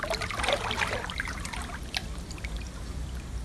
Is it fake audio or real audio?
real